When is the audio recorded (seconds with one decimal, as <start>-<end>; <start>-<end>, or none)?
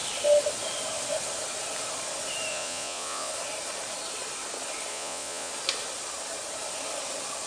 0.0-2.5; 3.3-4.9; 5.5-7.5